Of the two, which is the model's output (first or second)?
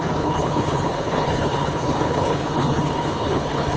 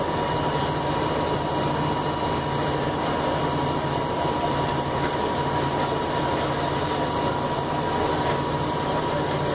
first